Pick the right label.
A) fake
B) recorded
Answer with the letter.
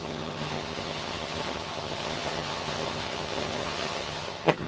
A